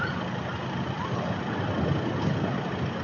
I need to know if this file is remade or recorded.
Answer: recorded